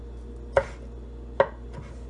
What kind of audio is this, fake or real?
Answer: real